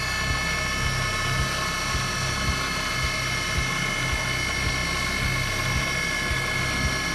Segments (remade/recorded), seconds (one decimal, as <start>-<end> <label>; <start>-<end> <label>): 0.0-7.1 recorded